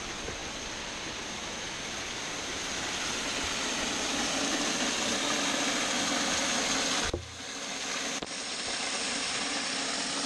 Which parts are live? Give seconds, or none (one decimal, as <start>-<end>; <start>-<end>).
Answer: 0.0-10.3